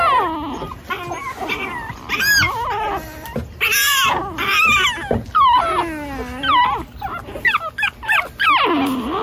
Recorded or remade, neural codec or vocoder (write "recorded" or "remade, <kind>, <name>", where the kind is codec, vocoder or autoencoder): recorded